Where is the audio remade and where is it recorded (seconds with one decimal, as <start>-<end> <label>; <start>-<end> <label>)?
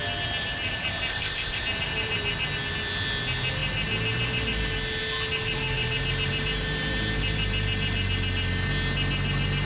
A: 0.0-1.1 recorded; 1.1-1.6 remade; 1.6-9.7 recorded